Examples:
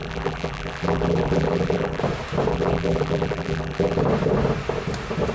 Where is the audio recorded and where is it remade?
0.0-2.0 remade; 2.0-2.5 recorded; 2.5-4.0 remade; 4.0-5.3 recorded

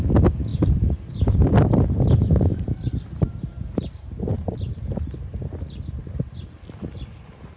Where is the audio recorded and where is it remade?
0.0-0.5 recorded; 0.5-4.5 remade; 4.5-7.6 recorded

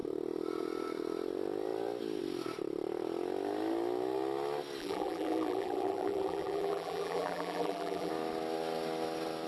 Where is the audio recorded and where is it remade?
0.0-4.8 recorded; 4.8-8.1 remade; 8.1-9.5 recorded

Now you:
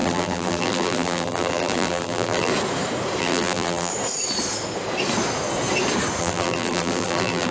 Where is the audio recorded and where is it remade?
0.0-2.5 remade; 2.5-3.2 recorded; 3.2-3.9 remade; 3.9-6.2 recorded; 6.2-7.5 remade